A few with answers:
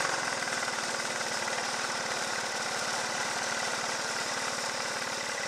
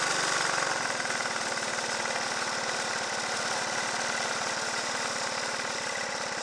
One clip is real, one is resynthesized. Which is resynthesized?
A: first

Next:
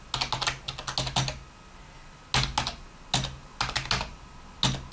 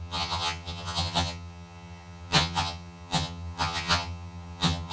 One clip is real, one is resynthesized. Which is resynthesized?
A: second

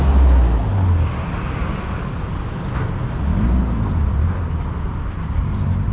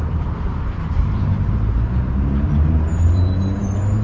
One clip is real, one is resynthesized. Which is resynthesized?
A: second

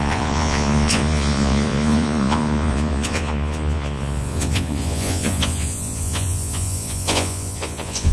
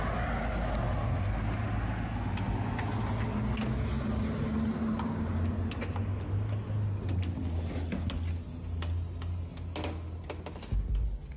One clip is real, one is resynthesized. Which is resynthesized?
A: first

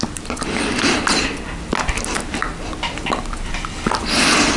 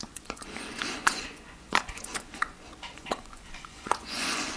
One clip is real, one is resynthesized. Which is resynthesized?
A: second